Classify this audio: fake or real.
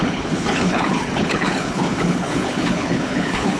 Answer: fake